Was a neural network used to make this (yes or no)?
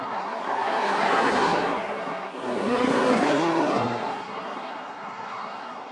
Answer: yes